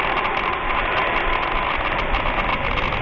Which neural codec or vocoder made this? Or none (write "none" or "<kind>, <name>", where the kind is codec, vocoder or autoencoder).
none